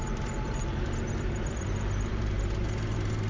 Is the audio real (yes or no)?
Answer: no